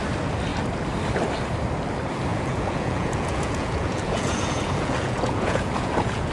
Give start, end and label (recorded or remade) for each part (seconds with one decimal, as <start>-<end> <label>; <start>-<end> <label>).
0.0-2.3 recorded; 2.3-6.3 remade